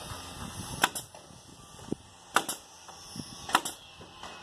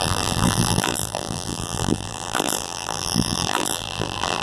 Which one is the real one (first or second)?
first